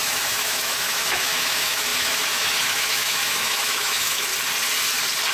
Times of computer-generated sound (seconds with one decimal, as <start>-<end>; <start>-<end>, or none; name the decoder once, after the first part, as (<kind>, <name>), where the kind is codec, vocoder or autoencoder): 0.0-4.3 (autoencoder, DAC-VAE)

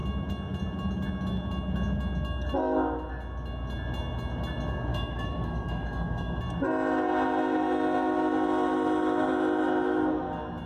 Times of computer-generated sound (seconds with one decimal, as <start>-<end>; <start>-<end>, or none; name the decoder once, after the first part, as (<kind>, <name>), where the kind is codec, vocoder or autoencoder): 4.9-6.4 (autoencoder, DAC-VAE)